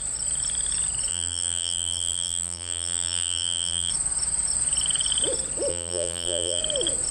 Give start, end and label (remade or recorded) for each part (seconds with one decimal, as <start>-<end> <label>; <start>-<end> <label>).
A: 0.0-1.1 recorded; 1.1-3.9 remade; 3.9-5.7 recorded; 5.7-6.6 remade; 6.6-7.1 recorded